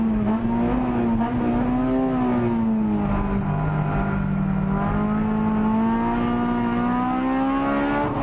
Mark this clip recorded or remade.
recorded